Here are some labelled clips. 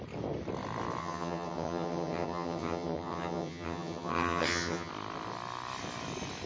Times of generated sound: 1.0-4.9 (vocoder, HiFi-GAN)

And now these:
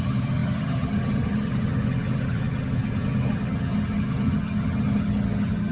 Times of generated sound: 0.0-5.7 (vocoder, HiFi-GAN)

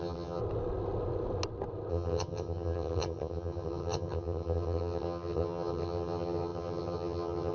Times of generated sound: 0.0-0.4 (vocoder, HiFi-GAN); 1.9-7.5

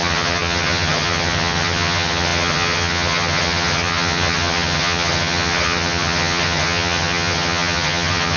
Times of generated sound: 0.0-8.4 (vocoder, HiFi-GAN)

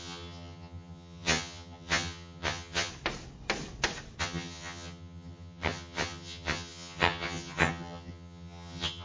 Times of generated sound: 0.0-2.9 (vocoder, HiFi-GAN); 4.2-9.0